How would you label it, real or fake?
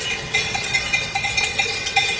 fake